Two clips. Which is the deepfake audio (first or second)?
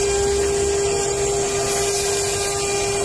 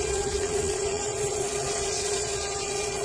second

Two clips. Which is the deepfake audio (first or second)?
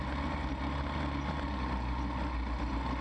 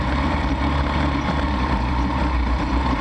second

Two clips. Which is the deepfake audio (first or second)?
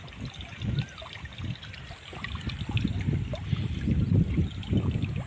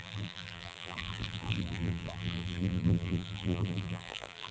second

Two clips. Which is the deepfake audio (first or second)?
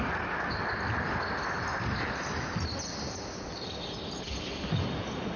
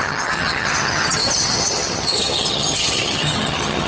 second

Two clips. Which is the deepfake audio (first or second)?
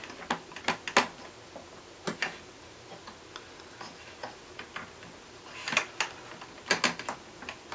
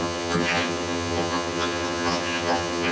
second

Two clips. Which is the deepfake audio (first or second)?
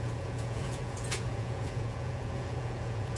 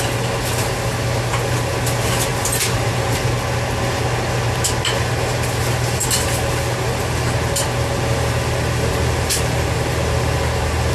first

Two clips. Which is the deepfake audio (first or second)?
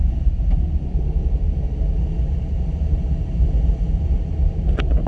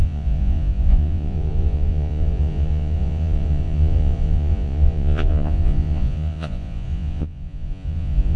second